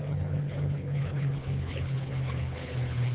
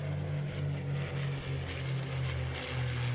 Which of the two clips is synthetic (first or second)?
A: first